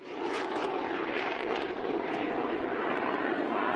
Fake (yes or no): yes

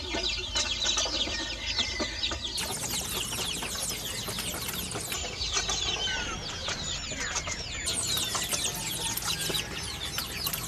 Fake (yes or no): no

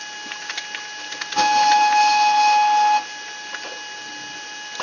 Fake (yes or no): no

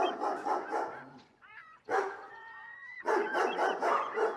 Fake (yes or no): yes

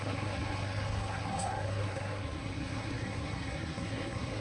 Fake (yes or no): yes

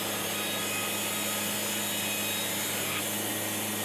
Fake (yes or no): no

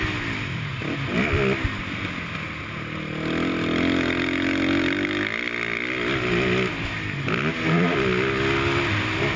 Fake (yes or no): no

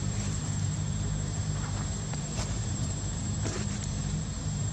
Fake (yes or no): yes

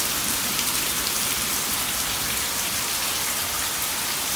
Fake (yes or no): yes